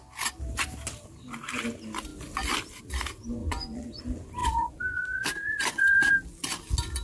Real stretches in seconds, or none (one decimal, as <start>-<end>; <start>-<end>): 0.0-3.4; 4.0-4.4; 6.1-7.0